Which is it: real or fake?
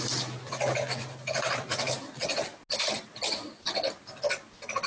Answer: real